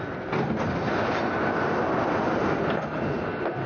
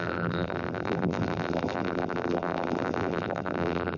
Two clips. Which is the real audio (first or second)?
first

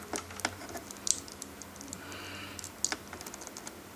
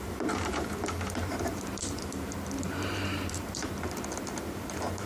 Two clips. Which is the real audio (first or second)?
first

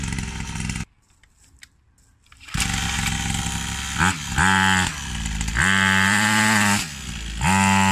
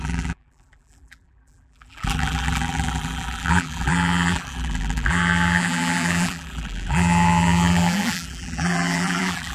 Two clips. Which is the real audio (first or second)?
first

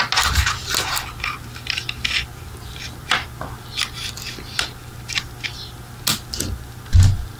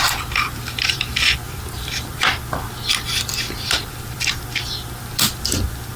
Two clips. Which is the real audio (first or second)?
first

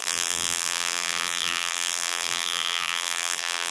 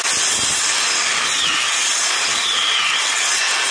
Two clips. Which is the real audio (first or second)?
second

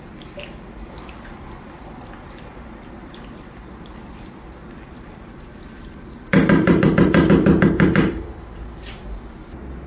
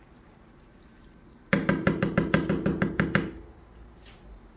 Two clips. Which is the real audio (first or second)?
second